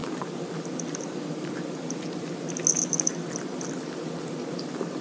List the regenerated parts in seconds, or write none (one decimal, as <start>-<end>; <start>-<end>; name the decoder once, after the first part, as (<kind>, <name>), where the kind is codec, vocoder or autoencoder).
0.0-2.5 (vocoder, BigVGAN v2)